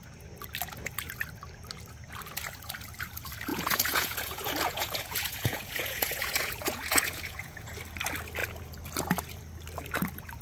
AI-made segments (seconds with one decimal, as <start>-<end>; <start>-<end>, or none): 3.5-7.8

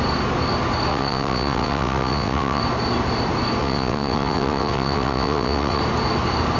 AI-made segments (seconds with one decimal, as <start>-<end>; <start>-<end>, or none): 0.9-2.6; 3.6-5.8

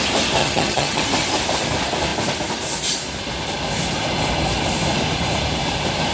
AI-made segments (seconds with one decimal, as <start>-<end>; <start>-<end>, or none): 0.4-1.0

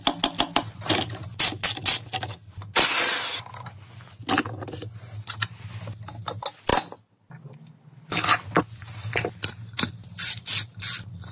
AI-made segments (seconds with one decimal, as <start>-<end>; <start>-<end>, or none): none

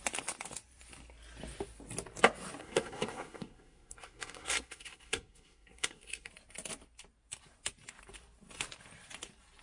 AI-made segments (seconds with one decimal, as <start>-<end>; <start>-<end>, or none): 2.6-6.3

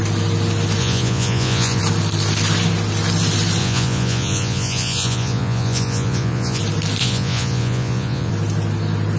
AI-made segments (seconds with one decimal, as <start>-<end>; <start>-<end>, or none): 0.8-1.8; 3.6-6.6; 7.0-8.3